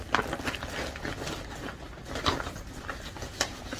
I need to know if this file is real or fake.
real